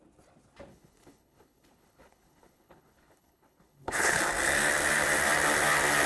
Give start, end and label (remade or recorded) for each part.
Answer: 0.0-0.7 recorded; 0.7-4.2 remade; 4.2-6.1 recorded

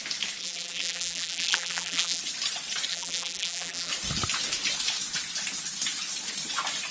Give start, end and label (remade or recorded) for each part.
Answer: 0.0-0.4 recorded; 0.4-2.2 remade; 2.2-2.9 recorded; 2.9-3.9 remade; 3.9-6.9 recorded

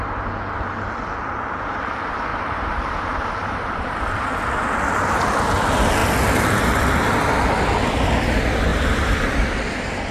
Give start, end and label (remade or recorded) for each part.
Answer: 0.0-2.3 recorded; 2.3-3.9 remade; 3.9-8.7 recorded; 8.7-9.3 remade; 9.3-10.1 recorded

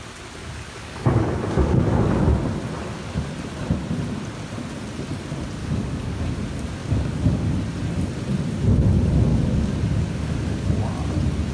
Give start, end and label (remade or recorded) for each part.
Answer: 0.0-0.4 recorded; 0.4-2.2 remade; 2.2-5.6 recorded; 5.6-6.2 remade; 6.2-6.8 recorded; 6.8-7.5 remade; 7.5-9.3 recorded; 9.3-10.8 remade; 10.8-11.5 recorded

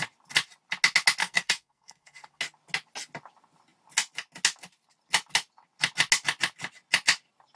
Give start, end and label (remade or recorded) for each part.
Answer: 0.0-1.2 recorded; 1.2-2.4 remade; 2.4-7.6 recorded

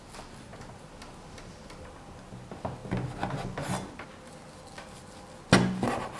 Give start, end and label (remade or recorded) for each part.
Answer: 0.0-6.2 recorded

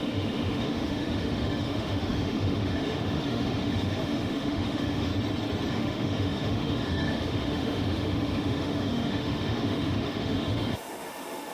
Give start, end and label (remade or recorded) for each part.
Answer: 0.0-5.1 remade; 5.1-5.7 recorded; 5.7-11.5 remade